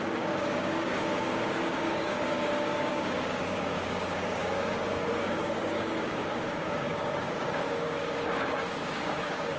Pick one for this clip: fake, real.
fake